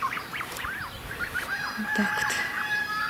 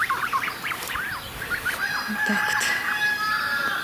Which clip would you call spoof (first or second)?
first